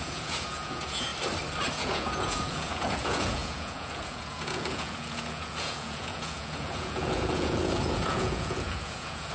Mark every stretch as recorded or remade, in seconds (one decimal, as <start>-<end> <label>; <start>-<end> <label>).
0.0-1.1 remade; 1.1-1.7 recorded; 1.7-9.3 remade